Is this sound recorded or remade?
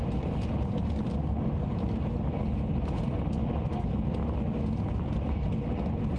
recorded